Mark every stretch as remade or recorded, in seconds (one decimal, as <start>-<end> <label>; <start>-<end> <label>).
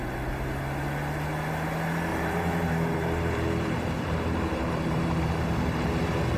0.0-2.1 recorded; 2.1-5.9 remade; 5.9-6.4 recorded